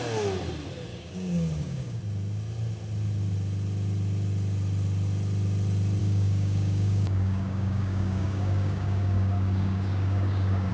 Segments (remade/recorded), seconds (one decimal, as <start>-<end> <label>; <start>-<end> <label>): 0.0-0.9 recorded; 0.9-2.0 remade; 2.0-6.0 recorded; 6.0-10.7 remade